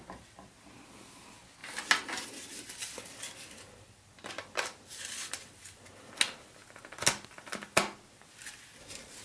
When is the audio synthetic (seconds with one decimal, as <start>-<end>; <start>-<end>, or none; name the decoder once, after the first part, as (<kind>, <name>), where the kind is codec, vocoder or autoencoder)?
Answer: none